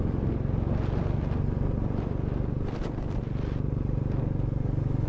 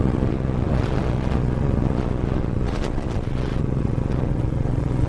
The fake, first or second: second